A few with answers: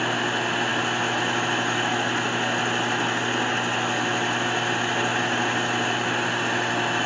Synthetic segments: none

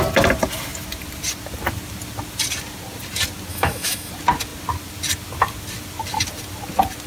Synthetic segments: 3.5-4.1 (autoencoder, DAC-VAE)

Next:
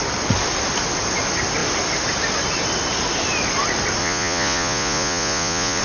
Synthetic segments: 4.0-5.8 (vocoder, Vocos)

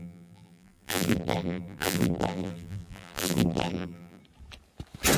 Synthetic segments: 0.0-4.2 (vocoder, BigVGAN v2)